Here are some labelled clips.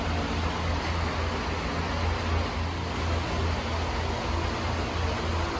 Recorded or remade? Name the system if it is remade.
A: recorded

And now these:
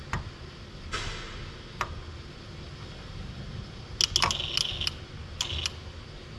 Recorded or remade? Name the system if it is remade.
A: recorded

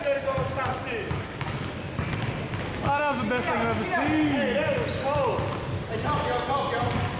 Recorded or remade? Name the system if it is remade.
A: recorded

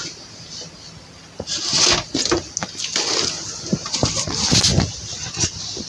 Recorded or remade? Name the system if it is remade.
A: recorded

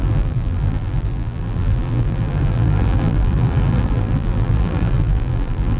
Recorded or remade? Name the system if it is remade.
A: remade, vocoder, BigVGAN v2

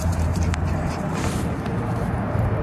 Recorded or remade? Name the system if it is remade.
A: remade, vocoder, BigVGAN v2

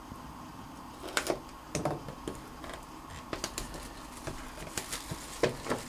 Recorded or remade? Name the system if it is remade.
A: recorded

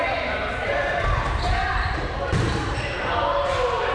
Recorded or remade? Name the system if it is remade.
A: remade, vocoder, BigVGAN v2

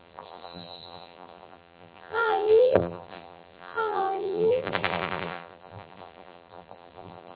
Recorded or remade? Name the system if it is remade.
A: remade, vocoder, BigVGAN v2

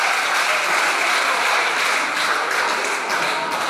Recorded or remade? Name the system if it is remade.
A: recorded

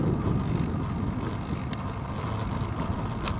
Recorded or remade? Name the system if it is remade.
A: recorded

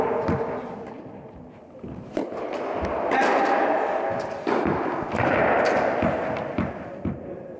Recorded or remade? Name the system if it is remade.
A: recorded